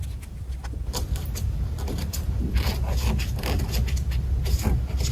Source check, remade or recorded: recorded